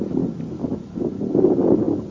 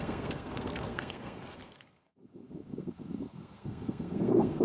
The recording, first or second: first